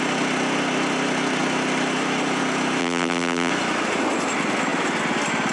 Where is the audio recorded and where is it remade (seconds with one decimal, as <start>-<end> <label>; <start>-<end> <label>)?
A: 0.0-2.8 recorded; 2.8-3.5 remade; 3.5-5.5 recorded

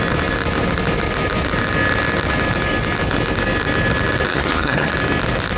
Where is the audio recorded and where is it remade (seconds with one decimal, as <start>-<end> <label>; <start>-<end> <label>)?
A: 0.0-4.3 recorded; 4.3-4.9 remade; 4.9-5.6 recorded